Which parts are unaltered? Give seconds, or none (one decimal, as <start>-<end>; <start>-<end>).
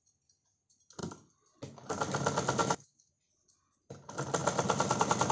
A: 0.0-2.6; 3.1-5.3